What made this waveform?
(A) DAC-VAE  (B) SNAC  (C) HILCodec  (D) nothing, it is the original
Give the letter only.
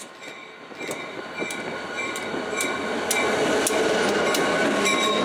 D